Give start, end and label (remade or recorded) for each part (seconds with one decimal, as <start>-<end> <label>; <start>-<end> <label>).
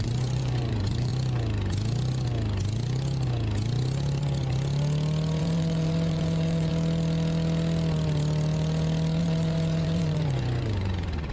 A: 0.0-1.1 remade; 1.1-5.4 recorded; 5.4-6.7 remade; 6.7-9.2 recorded; 9.2-11.3 remade